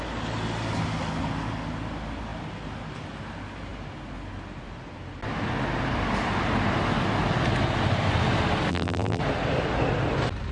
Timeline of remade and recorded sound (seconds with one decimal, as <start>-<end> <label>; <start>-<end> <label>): 0.0-8.7 recorded; 8.7-9.2 remade; 9.2-10.5 recorded